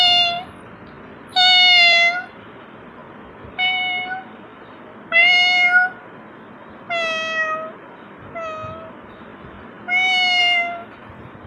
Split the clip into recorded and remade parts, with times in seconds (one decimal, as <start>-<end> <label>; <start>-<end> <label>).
0.0-11.5 recorded